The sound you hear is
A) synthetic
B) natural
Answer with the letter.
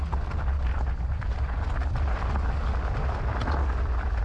B